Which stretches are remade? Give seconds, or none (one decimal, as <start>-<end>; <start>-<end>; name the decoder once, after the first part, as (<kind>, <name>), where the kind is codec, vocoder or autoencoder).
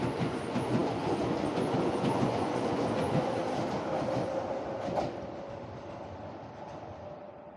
0.0-3.4 (vocoder, Vocos)